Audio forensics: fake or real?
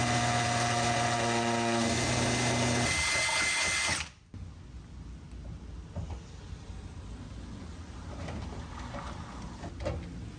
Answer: real